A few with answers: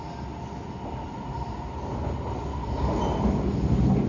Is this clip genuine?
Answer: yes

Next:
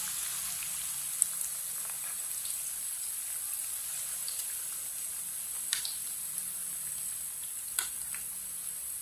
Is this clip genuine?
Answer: yes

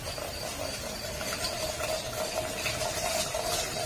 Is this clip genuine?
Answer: yes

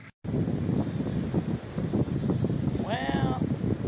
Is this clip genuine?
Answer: yes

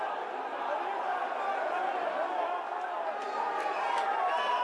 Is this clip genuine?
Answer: yes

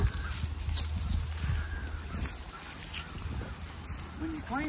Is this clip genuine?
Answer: yes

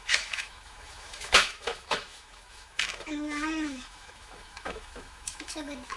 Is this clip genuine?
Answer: no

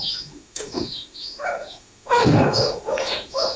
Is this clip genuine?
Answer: no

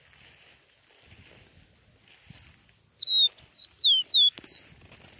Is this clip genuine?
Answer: yes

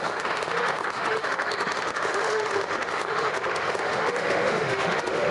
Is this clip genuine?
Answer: no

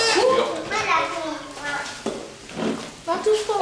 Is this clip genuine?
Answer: yes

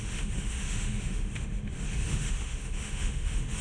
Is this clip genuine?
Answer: no